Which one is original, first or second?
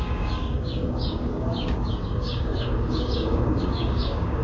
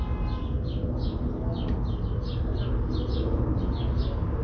second